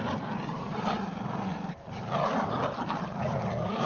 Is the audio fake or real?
real